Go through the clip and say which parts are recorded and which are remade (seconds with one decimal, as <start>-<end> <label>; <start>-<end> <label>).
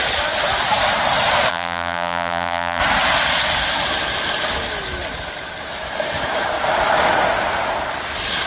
0.0-1.5 recorded; 1.5-2.8 remade; 2.8-8.5 recorded